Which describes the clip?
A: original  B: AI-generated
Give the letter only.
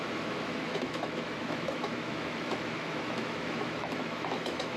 B